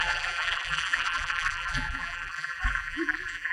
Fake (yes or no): yes